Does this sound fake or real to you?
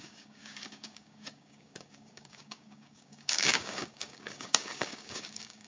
fake